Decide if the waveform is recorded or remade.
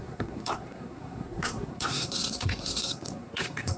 remade